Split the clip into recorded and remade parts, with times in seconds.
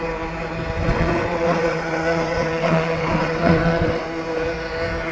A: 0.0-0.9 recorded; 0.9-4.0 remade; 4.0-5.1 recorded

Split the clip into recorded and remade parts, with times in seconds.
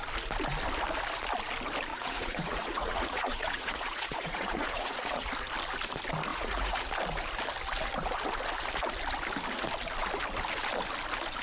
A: 0.0-1.9 recorded; 1.9-5.3 remade; 5.3-6.3 recorded; 6.3-6.9 remade; 6.9-11.4 recorded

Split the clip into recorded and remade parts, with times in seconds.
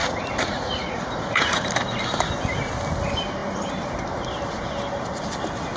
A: 0.0-1.7 remade; 1.7-5.8 recorded